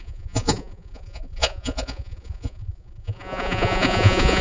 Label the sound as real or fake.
fake